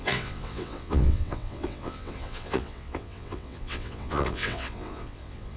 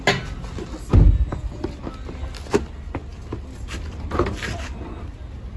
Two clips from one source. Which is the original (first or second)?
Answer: second